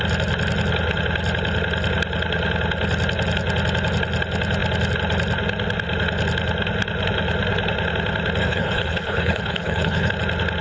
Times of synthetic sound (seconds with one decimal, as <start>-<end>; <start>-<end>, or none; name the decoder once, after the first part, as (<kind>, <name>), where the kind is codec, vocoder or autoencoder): 8.4-10.1 (codec, HILCodec)